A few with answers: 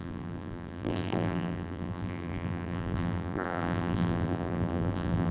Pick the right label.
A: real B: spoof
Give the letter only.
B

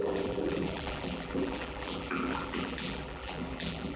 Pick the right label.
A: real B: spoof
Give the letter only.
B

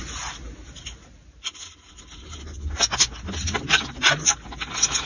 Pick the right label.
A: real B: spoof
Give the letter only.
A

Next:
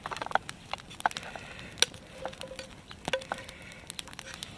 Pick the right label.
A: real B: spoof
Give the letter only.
A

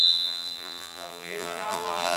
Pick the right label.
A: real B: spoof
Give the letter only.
B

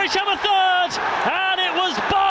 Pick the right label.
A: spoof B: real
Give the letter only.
B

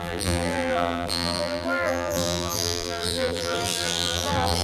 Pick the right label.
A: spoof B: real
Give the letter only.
A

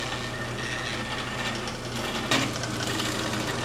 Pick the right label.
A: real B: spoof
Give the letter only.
A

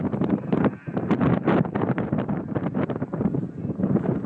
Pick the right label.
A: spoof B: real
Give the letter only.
A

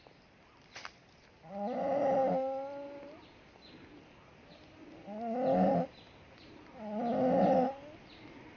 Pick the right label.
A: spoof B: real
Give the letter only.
A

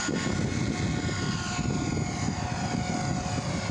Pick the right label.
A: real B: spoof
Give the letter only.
A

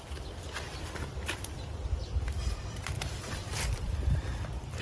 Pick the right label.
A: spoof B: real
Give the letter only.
A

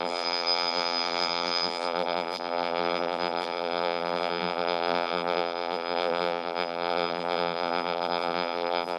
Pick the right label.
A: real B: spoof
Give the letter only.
B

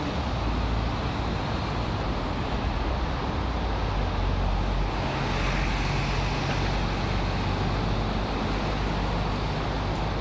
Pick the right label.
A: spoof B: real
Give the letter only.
B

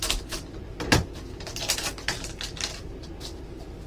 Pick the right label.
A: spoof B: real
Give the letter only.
A